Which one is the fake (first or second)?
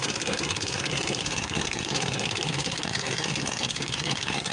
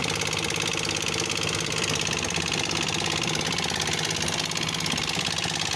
first